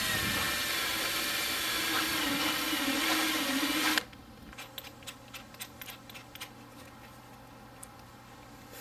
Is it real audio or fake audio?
real